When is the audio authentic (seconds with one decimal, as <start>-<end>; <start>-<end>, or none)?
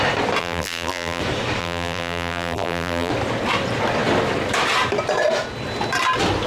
0.0-0.4; 1.2-1.6; 3.1-6.5